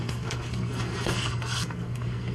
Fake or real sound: fake